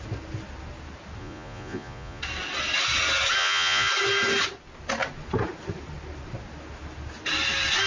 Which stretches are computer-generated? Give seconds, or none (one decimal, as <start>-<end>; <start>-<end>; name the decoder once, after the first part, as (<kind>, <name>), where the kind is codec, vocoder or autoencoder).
1.2-2.2 (vocoder, Vocos); 3.4-3.9